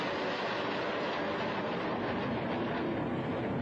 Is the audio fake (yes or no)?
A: no